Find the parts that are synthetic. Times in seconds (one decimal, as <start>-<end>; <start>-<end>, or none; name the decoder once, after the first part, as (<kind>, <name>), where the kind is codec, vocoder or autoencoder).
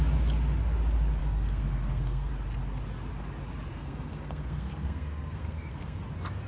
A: 1.2-2.3 (codec, SNAC); 3.7-6.0